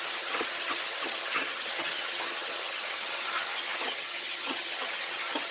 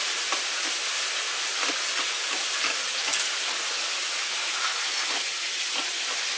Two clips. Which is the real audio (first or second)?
second